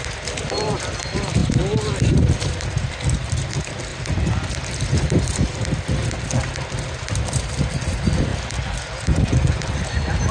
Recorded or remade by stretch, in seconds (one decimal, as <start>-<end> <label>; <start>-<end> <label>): 0.0-1.4 remade; 1.4-2.0 recorded; 2.0-3.9 remade; 3.9-4.9 recorded; 4.9-6.0 remade; 6.0-6.5 recorded; 6.5-8.3 remade; 8.3-8.8 recorded; 8.8-10.3 remade